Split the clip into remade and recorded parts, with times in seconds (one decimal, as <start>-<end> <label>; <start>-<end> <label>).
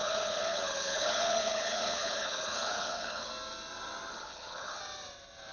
0.0-3.3 remade; 3.3-4.1 recorded; 4.1-4.8 remade; 4.8-5.5 recorded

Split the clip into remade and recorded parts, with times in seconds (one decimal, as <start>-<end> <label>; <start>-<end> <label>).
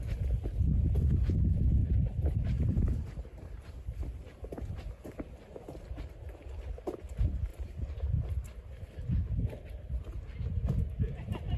0.0-1.8 recorded; 1.8-4.5 remade; 4.5-11.6 recorded